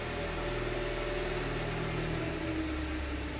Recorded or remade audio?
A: recorded